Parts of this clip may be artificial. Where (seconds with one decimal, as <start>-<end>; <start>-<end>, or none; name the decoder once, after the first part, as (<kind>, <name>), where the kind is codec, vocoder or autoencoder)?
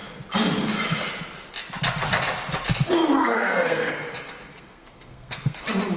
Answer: 3.2-3.9 (codec, SNAC); 4.5-5.6